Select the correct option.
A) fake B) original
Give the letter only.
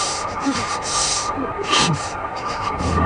A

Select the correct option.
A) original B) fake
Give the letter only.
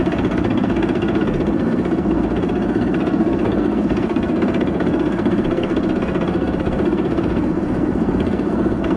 B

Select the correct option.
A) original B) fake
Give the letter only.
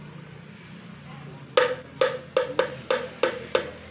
A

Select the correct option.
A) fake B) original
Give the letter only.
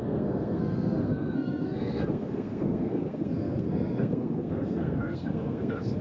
A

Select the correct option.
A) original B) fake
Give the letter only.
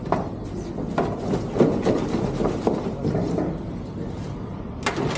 A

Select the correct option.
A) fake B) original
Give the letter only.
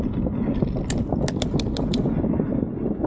B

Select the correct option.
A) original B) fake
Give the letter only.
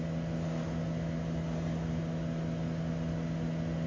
A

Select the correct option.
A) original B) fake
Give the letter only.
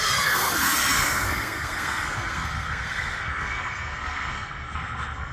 B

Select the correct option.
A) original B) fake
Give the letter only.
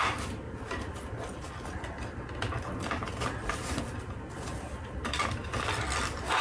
A